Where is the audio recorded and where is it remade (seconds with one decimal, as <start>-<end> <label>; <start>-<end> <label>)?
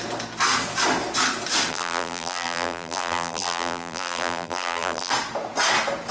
0.0-1.7 recorded; 1.7-5.1 remade; 5.1-6.1 recorded